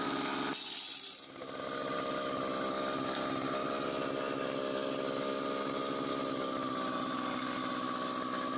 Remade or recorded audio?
recorded